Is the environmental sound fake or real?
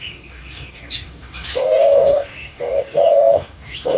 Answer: fake